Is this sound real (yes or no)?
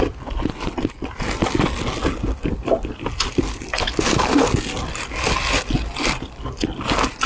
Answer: yes